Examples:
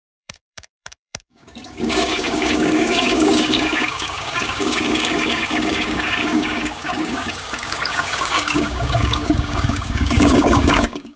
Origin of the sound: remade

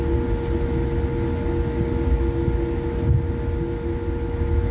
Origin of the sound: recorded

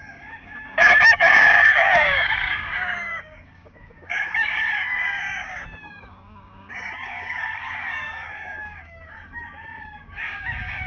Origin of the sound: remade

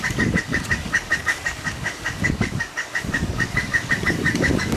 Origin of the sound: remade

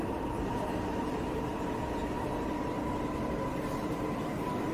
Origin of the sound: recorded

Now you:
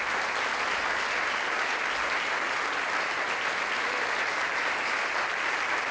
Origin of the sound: recorded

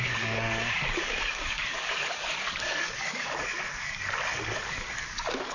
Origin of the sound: remade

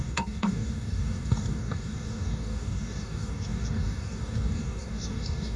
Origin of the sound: remade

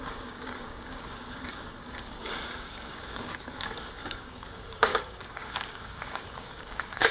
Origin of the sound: remade